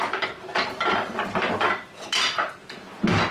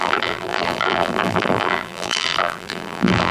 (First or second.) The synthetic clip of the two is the second